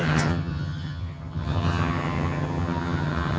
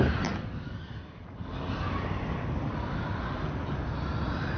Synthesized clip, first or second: first